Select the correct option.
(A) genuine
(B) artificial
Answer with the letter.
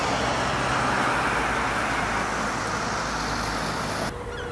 A